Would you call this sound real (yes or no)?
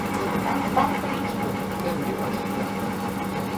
yes